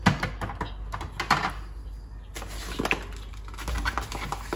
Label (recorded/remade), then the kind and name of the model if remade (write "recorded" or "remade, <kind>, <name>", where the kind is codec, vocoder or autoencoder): recorded